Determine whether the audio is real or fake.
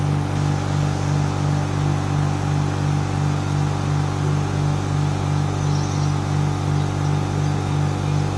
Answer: real